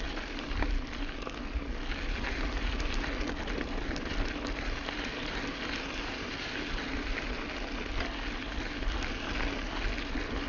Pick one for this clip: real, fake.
real